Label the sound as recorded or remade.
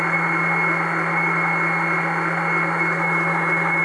recorded